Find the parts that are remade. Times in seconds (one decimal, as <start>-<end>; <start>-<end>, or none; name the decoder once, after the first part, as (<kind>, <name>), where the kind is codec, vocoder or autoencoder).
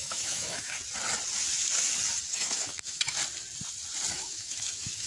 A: 0.0-0.8 (autoencoder, DAC-VAE); 2.3-3.2; 4.1-5.1